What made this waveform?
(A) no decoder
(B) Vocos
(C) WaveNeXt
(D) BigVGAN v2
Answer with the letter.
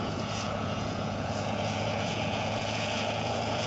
B